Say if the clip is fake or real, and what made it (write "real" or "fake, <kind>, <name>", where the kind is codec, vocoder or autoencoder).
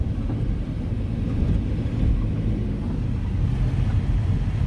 real